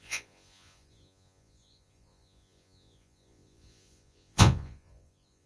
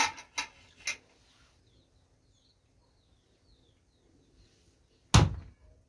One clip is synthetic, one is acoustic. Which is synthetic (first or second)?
first